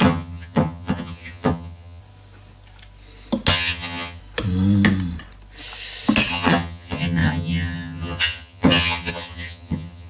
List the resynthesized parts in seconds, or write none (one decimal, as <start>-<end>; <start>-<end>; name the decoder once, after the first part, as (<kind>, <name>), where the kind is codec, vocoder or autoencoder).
0.0-2.0 (vocoder, HiFi-GAN); 3.5-4.2; 6.3-10.1